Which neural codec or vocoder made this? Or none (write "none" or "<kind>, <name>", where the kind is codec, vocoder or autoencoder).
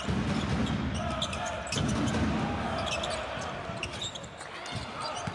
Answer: none